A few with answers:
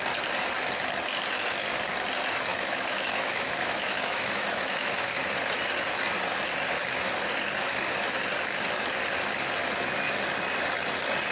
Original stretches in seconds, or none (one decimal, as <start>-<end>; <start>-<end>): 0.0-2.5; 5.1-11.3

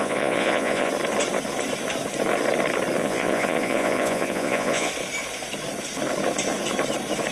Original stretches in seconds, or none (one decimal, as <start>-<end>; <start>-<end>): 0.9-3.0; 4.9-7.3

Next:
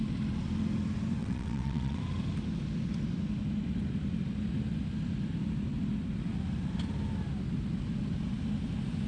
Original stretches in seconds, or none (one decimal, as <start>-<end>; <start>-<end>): 0.0-1.2; 2.0-9.1

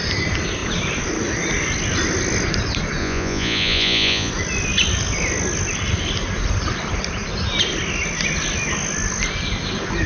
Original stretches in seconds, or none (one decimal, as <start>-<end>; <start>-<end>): 0.0-3.0; 4.3-10.1

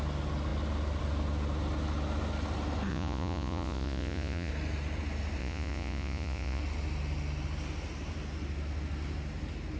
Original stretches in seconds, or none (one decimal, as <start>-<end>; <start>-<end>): 0.0-2.9; 4.5-5.4; 6.6-9.8